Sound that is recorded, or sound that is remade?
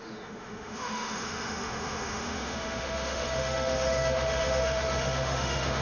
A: remade